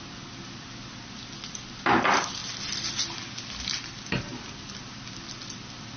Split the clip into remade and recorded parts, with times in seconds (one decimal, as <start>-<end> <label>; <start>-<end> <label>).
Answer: 0.0-6.0 recorded